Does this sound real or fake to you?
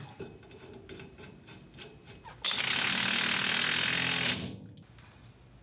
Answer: real